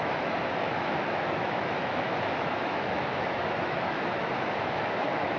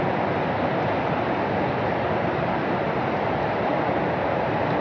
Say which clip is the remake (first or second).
first